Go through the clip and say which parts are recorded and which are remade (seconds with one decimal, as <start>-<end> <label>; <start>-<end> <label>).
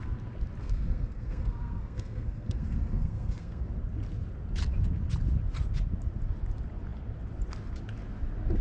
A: 0.0-0.6 recorded; 0.6-3.6 remade; 3.6-8.6 recorded